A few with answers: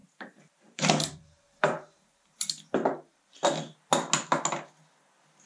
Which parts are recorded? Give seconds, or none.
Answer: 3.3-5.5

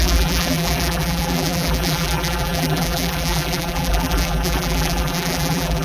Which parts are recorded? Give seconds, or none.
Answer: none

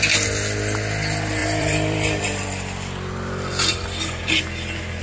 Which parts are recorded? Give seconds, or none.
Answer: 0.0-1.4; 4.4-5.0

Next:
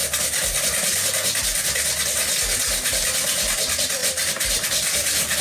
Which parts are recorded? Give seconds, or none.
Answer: 0.0-5.4